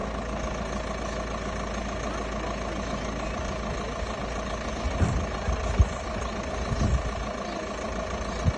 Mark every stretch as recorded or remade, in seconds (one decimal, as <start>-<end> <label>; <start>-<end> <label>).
0.0-8.6 recorded